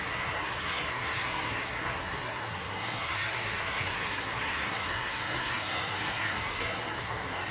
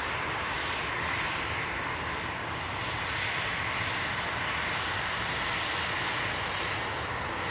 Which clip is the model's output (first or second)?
first